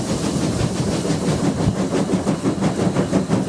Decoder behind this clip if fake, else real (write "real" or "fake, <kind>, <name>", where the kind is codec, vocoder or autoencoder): real